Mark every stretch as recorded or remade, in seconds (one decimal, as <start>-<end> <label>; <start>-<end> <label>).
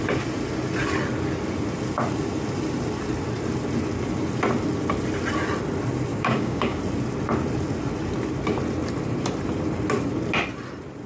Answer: 0.0-6.1 recorded; 6.1-6.8 remade; 6.8-11.1 recorded